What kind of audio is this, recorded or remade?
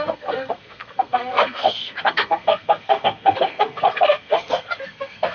remade